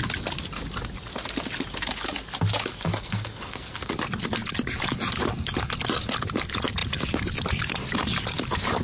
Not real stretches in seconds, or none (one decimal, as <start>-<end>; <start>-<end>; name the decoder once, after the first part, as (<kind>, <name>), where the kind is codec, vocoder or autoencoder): 2.7-3.9 (codec, SNAC)